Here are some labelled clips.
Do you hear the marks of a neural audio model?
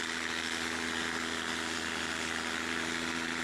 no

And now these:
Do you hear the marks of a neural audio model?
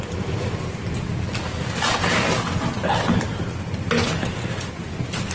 no